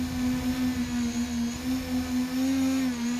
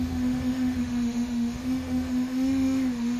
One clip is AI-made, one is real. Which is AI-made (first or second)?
second